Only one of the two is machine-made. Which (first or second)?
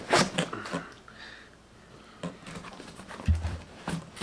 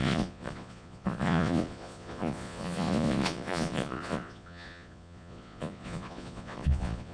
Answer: second